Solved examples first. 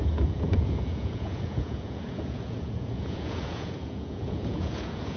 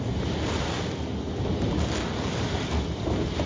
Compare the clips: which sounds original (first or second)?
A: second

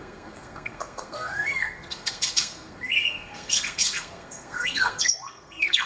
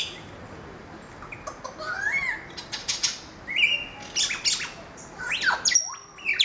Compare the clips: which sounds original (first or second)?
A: second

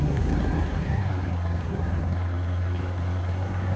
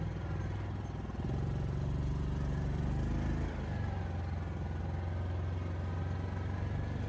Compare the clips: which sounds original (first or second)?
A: second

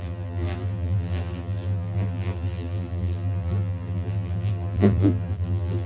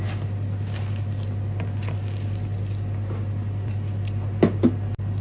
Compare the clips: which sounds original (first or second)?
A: second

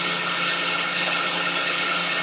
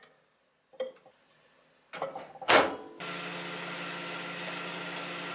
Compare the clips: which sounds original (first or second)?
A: second